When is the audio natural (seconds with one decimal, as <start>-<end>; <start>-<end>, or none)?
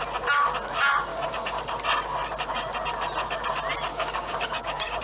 0.0-1.1; 1.6-3.9